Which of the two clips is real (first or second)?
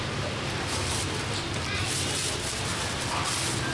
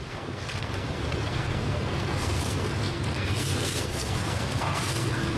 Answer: first